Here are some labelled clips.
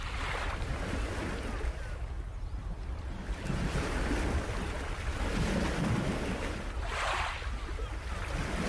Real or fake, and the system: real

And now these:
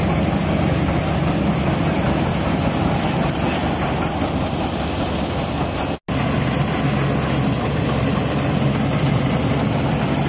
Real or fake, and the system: real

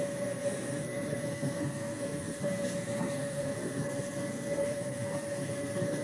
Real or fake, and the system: fake, codec, SNAC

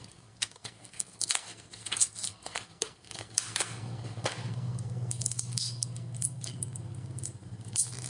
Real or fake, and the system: fake, codec, SNAC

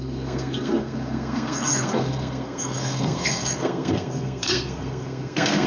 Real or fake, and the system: fake, codec, SNAC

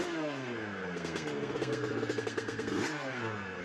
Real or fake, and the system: fake, codec, SNAC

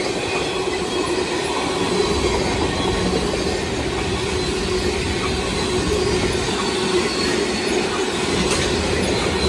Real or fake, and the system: real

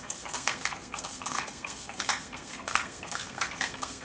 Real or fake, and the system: fake, codec, SNAC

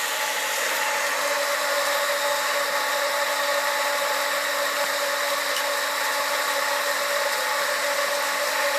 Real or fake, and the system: real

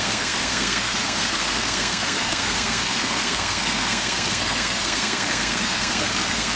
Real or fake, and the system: fake, codec, SNAC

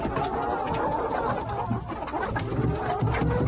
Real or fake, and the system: real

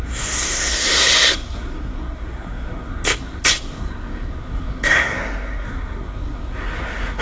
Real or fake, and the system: fake, codec, SNAC